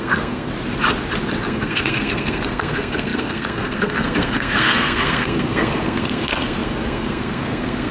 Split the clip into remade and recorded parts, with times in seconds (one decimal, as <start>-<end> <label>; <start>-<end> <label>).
0.0-0.5 remade; 0.5-1.4 recorded; 1.4-7.9 remade